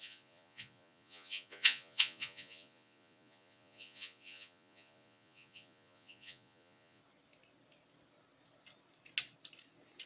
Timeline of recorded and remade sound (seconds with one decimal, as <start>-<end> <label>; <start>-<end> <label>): 0.0-7.0 remade; 7.0-10.1 recorded